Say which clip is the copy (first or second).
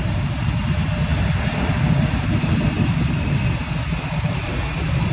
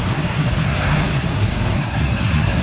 second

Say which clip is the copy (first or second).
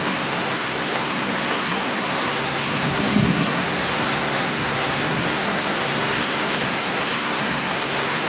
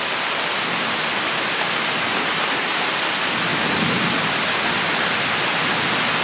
first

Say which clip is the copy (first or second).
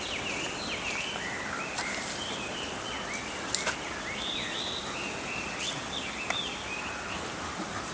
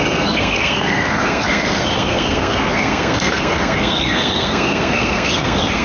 second